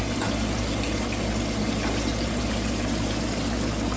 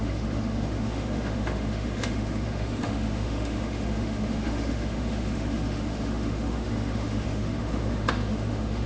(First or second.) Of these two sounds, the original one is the first